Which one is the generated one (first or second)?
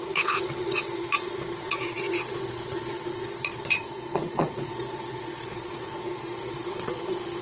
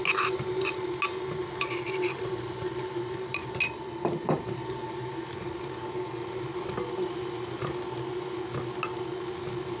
first